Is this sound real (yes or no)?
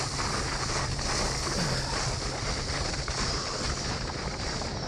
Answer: yes